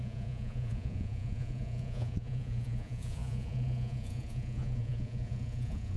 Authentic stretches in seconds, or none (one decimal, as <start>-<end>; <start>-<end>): none